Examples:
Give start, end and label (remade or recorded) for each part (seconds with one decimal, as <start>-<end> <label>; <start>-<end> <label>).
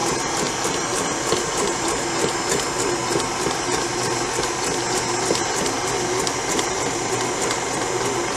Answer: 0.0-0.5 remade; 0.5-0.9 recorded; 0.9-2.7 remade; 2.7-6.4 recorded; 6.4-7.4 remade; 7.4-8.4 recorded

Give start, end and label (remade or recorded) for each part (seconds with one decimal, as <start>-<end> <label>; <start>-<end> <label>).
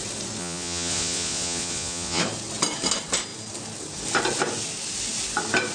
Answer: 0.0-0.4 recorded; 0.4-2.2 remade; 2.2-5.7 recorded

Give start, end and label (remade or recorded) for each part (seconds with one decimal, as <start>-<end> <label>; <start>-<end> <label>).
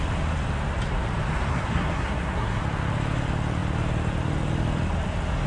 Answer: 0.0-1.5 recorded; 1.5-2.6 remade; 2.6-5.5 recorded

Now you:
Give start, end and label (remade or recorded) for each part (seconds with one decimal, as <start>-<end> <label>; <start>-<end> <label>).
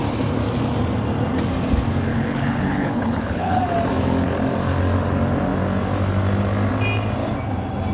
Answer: 0.0-2.1 recorded; 2.1-3.6 remade; 3.6-7.9 recorded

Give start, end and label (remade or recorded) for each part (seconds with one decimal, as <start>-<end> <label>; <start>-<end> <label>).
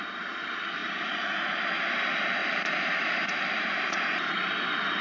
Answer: 0.0-0.8 recorded; 0.8-1.6 remade; 1.6-2.4 recorded; 2.4-5.0 remade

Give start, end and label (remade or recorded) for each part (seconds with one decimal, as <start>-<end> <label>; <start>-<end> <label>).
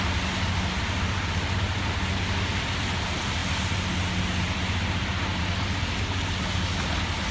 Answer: 0.0-7.3 recorded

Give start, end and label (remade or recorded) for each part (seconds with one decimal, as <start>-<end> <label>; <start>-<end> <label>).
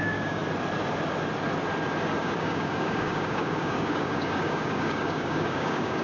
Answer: 0.0-0.4 remade; 0.4-2.2 recorded; 2.2-6.0 remade